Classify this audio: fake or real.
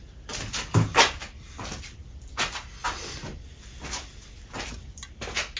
real